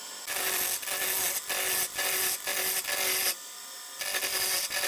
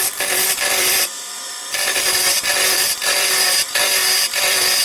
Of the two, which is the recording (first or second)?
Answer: first